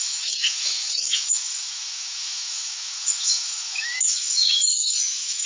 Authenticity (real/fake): fake